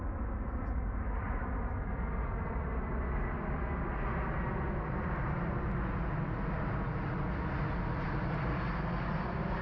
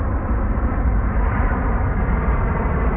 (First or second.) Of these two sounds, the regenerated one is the second